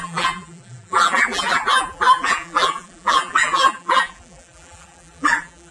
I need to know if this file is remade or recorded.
remade